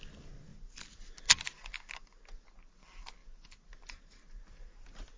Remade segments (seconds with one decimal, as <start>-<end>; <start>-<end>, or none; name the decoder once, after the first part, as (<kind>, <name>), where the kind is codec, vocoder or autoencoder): none